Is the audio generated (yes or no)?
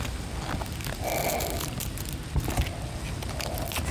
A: no